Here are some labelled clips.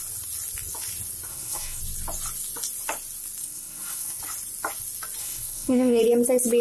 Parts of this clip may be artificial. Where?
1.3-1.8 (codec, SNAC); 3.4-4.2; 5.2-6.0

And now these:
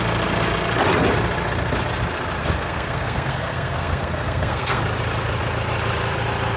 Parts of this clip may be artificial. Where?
2.4-4.8 (codec, SNAC)

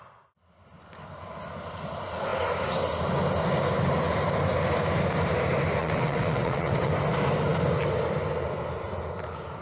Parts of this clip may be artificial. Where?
5.8-6.9 (vocoder, WaveNeXt)

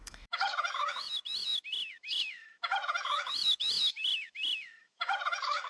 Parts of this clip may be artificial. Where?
0.0-5.7 (autoencoder, DAC-VAE)